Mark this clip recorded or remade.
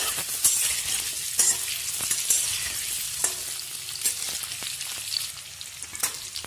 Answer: recorded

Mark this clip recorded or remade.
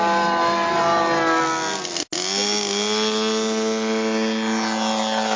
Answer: recorded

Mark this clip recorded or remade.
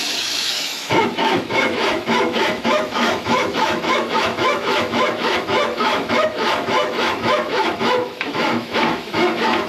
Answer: remade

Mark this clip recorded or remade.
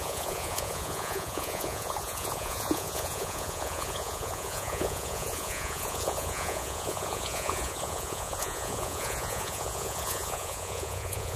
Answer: remade